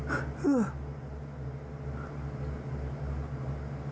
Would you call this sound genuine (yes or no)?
yes